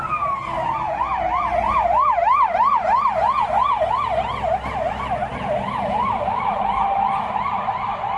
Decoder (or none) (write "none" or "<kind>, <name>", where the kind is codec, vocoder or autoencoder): none